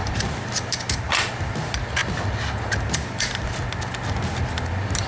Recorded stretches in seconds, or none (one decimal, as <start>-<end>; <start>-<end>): 0.5-5.1